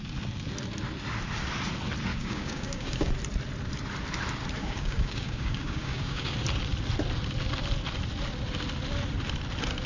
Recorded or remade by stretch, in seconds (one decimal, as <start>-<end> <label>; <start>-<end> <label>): 0.0-2.1 recorded; 2.1-3.1 remade; 3.1-4.6 recorded; 4.6-6.3 remade; 6.3-9.9 recorded